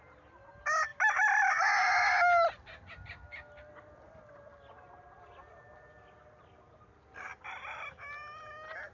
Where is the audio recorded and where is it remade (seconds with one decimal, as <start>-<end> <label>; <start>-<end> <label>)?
0.0-8.9 recorded